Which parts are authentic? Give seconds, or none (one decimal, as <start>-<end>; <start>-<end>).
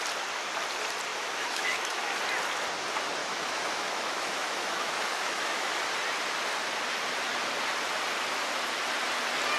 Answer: 0.0-1.1; 2.2-3.2; 5.7-9.6